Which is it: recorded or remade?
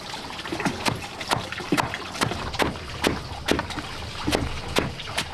recorded